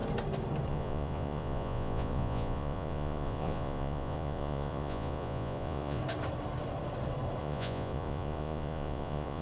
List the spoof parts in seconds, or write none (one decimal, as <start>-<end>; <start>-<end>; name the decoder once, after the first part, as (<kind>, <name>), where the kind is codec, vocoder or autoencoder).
0.7-6.0 (vocoder, Vocos); 7.4-9.4

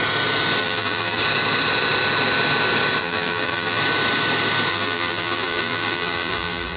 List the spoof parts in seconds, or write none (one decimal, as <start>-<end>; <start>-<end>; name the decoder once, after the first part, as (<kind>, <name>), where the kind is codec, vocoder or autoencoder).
0.6-1.2 (vocoder, BigVGAN v2); 3.0-3.8; 4.7-6.8

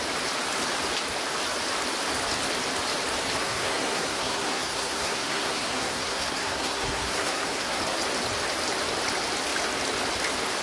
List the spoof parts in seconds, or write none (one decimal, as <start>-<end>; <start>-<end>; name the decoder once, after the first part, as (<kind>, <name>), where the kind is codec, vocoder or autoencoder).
3.4-7.8 (codec, SNAC)

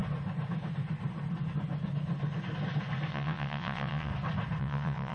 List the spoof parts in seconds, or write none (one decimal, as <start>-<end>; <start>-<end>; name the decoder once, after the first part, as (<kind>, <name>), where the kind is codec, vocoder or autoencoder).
3.1-4.1 (vocoder, WaveNeXt); 4.6-5.1

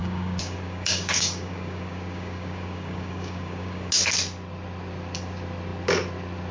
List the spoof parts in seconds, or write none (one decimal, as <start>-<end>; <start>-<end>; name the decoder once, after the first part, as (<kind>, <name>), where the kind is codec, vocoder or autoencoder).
0.0-3.9 (codec, DAC)

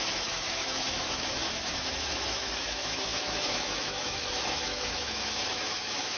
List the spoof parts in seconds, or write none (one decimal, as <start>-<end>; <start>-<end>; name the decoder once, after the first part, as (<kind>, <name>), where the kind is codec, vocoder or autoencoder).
0.0-6.2 (autoencoder, DAC-VAE)

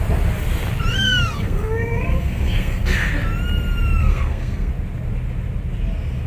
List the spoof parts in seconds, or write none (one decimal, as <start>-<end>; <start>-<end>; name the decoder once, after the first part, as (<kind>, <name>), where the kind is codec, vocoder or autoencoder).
0.9-3.1 (codec, SNAC); 4.0-4.7